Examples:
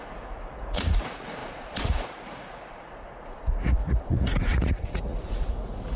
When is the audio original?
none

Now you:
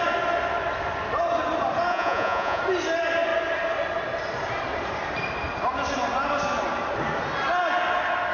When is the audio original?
0.0-1.9; 2.6-8.3

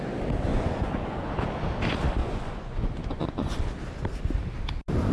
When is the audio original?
0.0-0.5; 1.3-2.2; 3.5-5.1